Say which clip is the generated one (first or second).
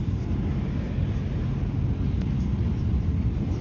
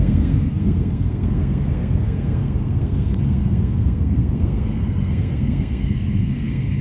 second